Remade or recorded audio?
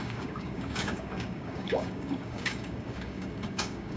remade